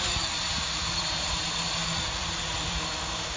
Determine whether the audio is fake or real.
fake